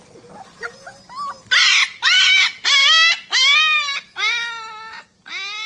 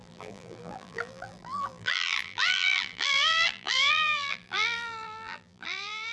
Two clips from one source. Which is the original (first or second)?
first